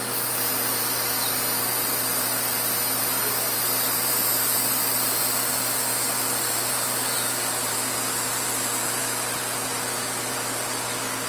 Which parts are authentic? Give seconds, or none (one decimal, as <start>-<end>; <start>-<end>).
0.0-11.3